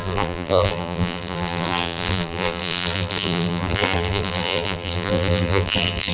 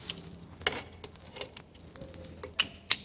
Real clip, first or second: second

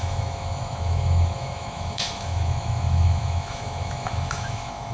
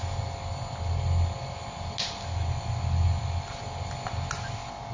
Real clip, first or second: second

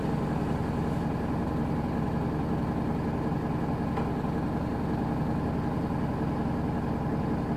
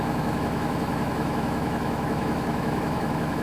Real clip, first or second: first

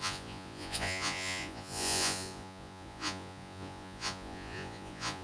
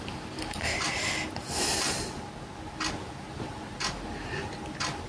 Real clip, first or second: second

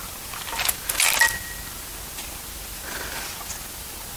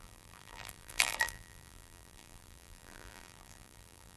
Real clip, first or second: first